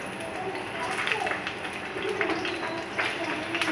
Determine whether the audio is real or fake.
real